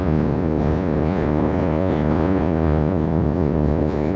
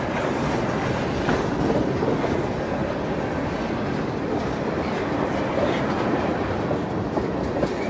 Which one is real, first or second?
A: second